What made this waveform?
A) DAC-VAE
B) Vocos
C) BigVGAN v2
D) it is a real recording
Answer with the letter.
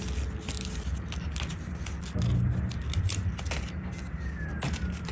D